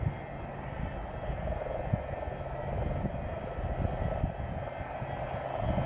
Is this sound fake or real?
real